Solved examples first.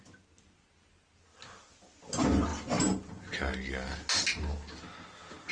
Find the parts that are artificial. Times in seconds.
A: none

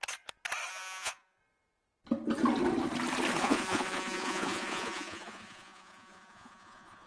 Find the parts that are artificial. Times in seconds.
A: 0.7-1.4 (vocoder, Vocos); 3.4-7.1